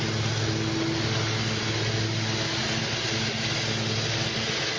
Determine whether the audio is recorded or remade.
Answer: recorded